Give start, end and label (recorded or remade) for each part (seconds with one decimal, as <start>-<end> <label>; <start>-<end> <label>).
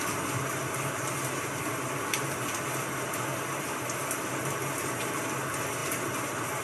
0.0-6.6 recorded